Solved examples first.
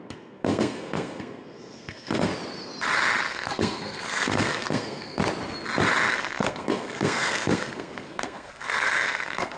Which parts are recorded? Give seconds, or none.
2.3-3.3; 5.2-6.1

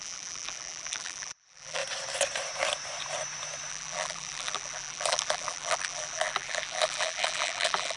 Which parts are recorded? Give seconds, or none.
1.8-3.7

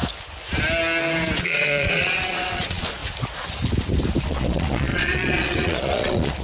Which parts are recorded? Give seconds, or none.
0.0-1.4; 3.0-4.2

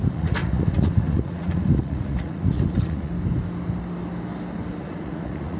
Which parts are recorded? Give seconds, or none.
3.1-4.8

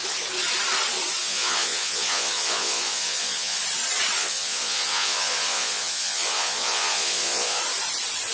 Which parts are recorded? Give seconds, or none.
0.0-1.2; 3.6-4.2; 7.6-8.3

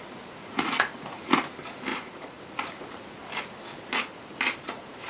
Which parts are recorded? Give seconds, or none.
0.0-0.4; 1.2-1.9; 2.4-5.1

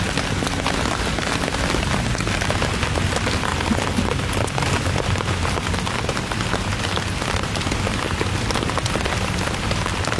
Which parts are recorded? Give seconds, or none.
0.0-3.5; 4.1-10.2

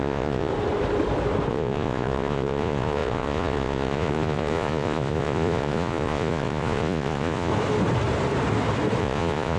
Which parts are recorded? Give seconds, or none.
0.5-1.5; 7.5-9.0